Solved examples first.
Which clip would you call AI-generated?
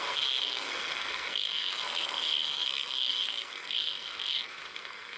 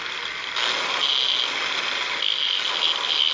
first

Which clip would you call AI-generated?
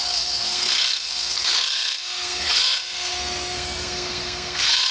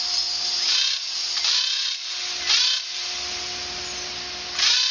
first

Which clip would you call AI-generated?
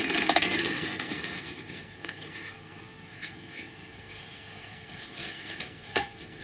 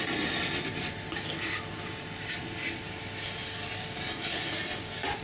first